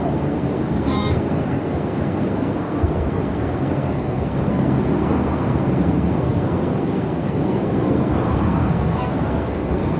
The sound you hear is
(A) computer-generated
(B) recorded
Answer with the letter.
A